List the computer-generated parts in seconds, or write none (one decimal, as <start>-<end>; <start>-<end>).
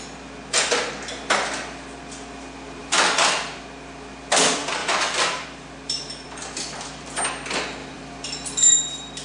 2.8-3.6; 4.8-7.2; 7.8-8.5